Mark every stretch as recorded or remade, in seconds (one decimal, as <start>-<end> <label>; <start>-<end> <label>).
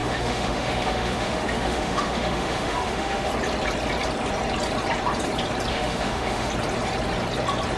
0.0-3.3 remade; 3.3-5.7 recorded; 5.7-6.5 remade; 6.5-7.8 recorded